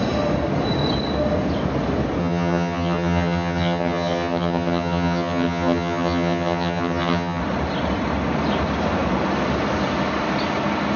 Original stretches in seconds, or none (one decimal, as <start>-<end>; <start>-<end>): 0.0-2.2; 7.4-11.0